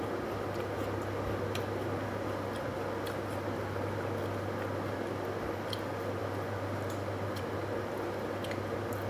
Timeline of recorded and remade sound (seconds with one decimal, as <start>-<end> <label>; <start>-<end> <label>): 0.0-9.1 recorded